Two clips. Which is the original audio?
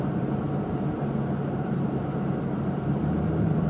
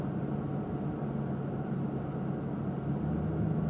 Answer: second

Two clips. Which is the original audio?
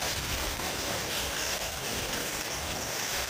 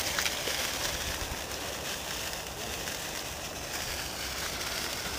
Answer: second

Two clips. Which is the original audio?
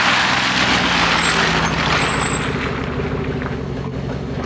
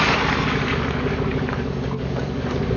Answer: first